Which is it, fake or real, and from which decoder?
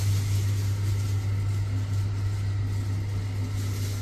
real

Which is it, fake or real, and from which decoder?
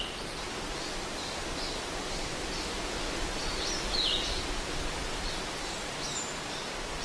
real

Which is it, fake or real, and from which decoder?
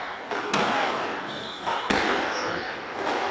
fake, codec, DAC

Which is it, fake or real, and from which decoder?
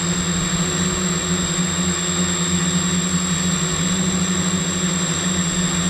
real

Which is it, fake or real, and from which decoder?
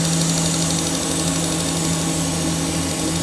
real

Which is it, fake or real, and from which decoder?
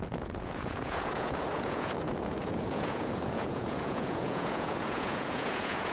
fake, vocoder, Vocos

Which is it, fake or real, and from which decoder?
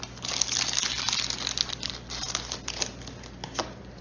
real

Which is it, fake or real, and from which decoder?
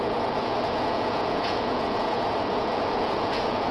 fake, vocoder, Vocos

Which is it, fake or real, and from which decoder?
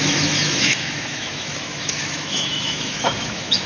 fake, autoencoder, DAC-VAE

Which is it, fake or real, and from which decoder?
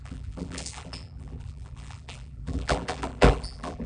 fake, vocoder, BigVGAN v2